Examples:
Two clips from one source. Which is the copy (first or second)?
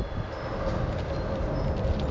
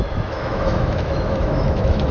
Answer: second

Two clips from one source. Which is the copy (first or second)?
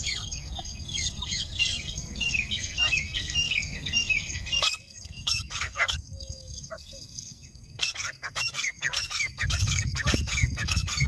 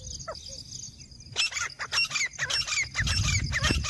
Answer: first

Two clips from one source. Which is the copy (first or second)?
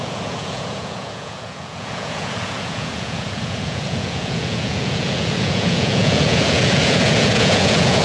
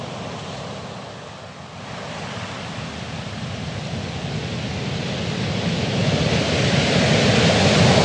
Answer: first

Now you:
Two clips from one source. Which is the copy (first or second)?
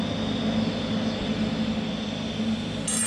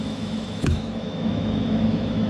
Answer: second